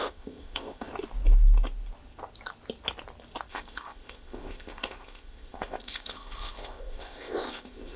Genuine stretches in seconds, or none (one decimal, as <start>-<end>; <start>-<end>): 0.9-3.5